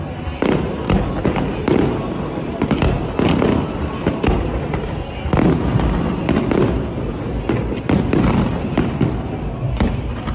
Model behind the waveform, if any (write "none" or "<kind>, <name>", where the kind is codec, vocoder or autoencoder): none